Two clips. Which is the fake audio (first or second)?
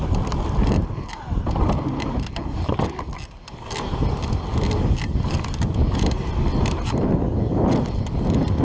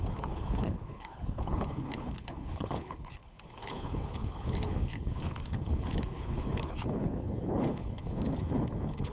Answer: second